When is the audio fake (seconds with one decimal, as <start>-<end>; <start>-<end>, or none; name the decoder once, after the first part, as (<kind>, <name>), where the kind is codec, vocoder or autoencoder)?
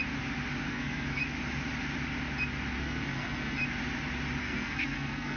0.7-1.2 (codec, SNAC); 2.8-3.6; 4.4-5.4